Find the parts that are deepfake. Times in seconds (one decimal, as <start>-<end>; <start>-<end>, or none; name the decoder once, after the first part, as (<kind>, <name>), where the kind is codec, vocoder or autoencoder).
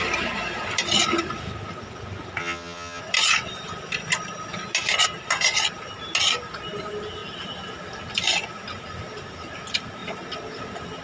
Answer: 2.4-3.0 (vocoder, HiFi-GAN)